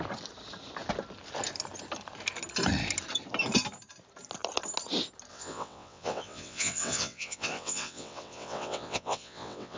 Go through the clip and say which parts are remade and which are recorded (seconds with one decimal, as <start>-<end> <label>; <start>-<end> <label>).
0.0-5.3 recorded; 5.3-9.8 remade

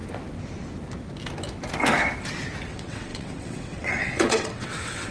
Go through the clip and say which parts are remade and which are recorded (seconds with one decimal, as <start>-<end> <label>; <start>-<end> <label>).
0.0-2.7 recorded; 2.7-5.1 remade

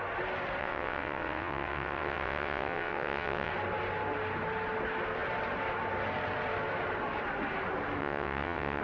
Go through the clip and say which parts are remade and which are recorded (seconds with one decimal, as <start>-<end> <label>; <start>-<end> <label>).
0.0-0.6 recorded; 0.6-3.5 remade; 3.5-8.0 recorded; 8.0-8.8 remade

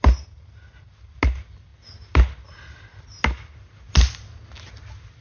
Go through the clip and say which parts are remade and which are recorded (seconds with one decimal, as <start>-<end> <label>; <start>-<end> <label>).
0.0-5.2 recorded

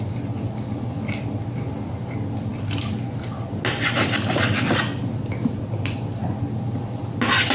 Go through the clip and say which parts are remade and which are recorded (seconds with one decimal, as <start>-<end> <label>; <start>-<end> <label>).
0.0-7.5 recorded

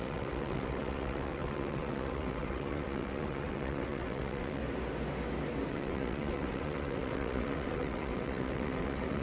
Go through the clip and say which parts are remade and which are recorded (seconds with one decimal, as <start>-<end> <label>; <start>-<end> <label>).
0.0-4.6 remade; 4.6-5.7 recorded; 5.7-9.2 remade

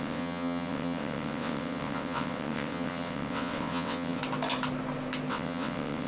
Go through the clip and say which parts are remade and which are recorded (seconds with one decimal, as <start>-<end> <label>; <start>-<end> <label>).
0.0-4.2 remade; 4.2-5.3 recorded; 5.3-6.1 remade